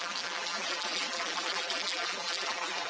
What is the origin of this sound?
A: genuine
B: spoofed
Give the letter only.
B